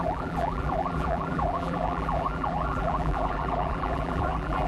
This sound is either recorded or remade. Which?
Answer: remade